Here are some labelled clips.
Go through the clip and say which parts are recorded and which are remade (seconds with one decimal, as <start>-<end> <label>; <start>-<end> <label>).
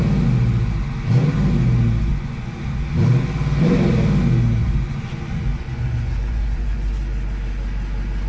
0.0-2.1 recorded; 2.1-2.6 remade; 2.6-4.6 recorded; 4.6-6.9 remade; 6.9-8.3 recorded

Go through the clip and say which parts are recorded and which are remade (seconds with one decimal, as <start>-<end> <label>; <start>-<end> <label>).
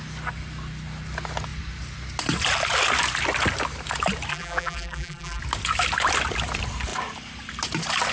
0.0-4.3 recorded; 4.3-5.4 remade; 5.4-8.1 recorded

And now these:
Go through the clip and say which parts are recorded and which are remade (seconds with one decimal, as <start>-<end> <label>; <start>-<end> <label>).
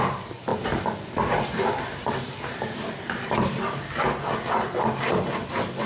0.0-0.5 recorded; 0.5-4.0 remade; 4.0-5.9 recorded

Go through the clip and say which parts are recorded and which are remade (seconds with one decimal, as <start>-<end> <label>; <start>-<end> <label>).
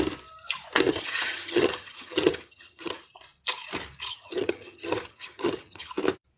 0.0-0.9 recorded; 0.9-3.0 remade; 3.0-4.1 recorded; 4.1-5.9 remade; 5.9-6.4 recorded